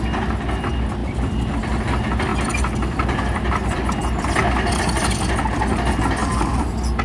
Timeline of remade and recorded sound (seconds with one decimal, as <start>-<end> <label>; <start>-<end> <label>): 0.0-1.0 recorded; 1.0-1.6 remade; 1.6-6.2 recorded; 6.2-7.0 remade